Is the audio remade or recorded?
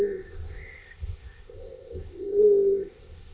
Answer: remade